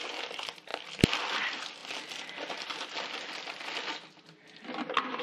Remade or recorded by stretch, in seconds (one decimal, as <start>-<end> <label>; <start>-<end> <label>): 0.0-5.2 recorded